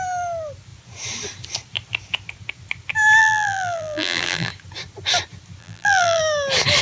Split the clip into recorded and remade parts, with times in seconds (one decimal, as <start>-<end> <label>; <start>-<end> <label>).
0.0-3.2 recorded; 3.2-4.5 remade; 4.5-5.6 recorded; 5.6-6.2 remade; 6.2-6.8 recorded